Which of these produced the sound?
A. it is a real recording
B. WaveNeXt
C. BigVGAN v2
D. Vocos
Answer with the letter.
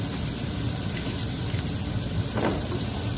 C